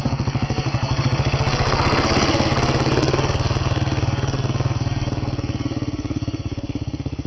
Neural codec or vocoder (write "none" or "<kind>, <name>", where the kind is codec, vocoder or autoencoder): codec, SNAC